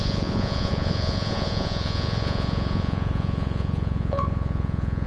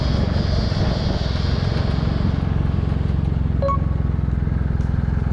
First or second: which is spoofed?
first